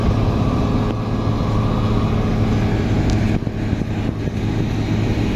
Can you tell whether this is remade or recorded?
recorded